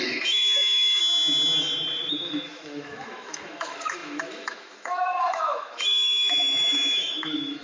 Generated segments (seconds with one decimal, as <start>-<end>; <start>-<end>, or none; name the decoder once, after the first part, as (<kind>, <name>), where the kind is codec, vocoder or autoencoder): 0.0-1.0 (autoencoder, DAC-VAE); 2.1-7.6